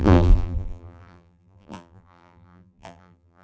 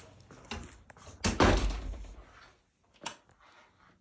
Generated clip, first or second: first